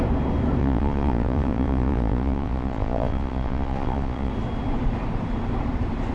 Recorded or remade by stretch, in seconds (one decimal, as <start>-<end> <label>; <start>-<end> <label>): 0.0-0.6 recorded; 0.6-4.3 remade; 4.3-6.1 recorded